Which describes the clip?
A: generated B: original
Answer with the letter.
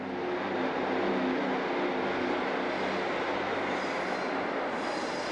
B